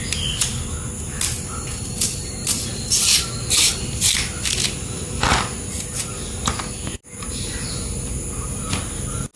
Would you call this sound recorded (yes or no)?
yes